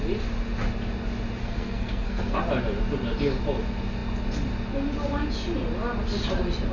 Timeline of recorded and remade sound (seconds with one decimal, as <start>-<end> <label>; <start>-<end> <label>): 0.0-1.4 recorded; 1.4-2.4 remade; 2.4-6.7 recorded